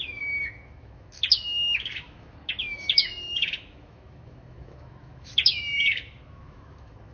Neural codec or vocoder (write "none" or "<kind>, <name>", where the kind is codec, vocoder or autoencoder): autoencoder, DAC-VAE